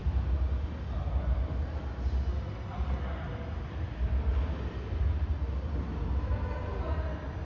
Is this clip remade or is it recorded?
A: recorded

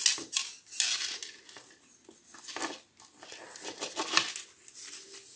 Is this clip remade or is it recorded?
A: recorded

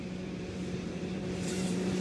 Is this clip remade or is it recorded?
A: remade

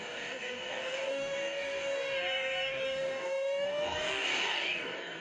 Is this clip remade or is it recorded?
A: remade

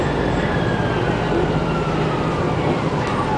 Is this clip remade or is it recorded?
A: recorded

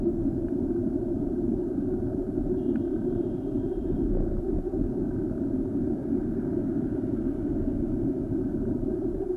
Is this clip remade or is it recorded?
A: remade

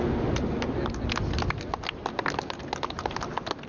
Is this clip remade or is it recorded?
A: recorded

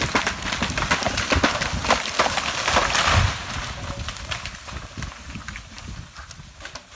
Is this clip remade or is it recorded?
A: recorded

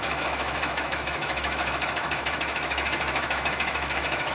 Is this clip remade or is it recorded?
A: remade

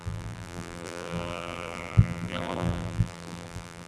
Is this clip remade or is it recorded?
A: remade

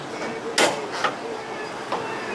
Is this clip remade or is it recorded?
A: recorded